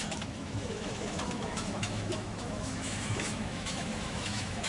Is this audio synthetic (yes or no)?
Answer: yes